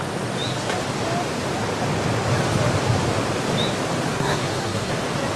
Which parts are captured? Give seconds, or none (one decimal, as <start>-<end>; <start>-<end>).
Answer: 0.0-4.1; 4.9-5.4